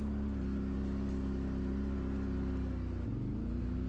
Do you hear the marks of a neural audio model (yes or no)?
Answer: no